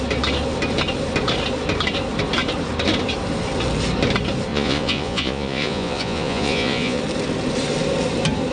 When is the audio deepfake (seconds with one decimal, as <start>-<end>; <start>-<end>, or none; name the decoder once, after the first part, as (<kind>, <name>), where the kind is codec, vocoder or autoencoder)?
4.5-7.0 (vocoder, Vocos)